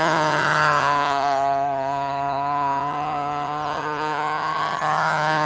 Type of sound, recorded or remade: remade